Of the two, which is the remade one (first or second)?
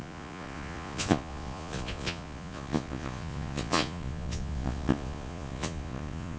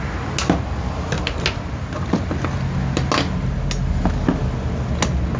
first